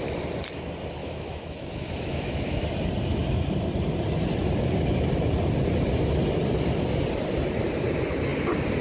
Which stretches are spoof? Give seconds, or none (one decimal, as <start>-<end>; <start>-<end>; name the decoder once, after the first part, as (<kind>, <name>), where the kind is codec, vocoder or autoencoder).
1.0-2.6 (autoencoder, DAC-VAE)